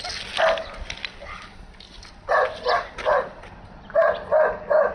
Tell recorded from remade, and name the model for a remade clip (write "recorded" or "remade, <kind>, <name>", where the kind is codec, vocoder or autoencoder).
recorded